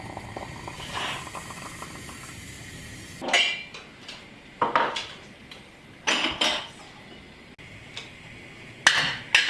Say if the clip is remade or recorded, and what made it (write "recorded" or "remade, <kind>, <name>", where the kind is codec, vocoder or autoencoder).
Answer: recorded